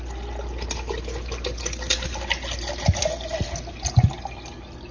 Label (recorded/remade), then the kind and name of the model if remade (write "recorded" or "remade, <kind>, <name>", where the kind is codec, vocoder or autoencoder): recorded